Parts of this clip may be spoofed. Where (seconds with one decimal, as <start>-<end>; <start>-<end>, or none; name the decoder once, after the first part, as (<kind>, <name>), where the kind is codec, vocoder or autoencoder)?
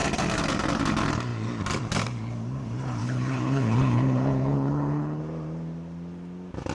3.0-5.2 (codec, HILCodec)